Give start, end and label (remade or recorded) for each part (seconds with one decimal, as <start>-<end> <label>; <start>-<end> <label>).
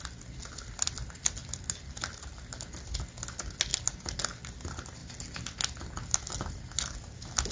0.0-1.4 recorded; 1.4-2.2 remade; 2.2-3.7 recorded; 3.7-4.5 remade; 4.5-7.5 recorded